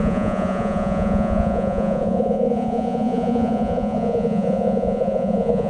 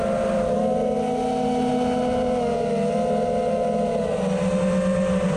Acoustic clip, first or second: second